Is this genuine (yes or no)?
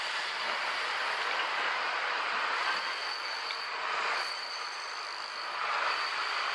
yes